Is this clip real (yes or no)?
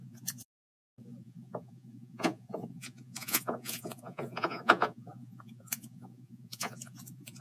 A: no